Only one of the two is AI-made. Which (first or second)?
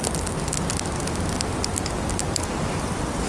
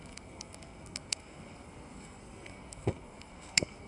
second